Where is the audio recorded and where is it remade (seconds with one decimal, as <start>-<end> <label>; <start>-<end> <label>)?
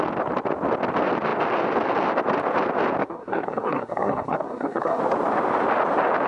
0.0-3.0 recorded; 3.0-5.0 remade; 5.0-6.3 recorded